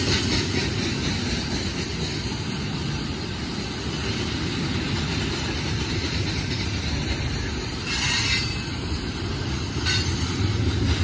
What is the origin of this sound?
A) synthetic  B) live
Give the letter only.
B